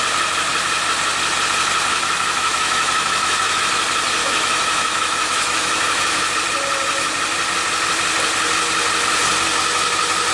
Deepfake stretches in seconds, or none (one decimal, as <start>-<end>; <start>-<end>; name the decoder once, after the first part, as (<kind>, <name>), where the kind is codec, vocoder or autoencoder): 1.9-3.6 (autoencoder, DAC-VAE); 4.2-6.3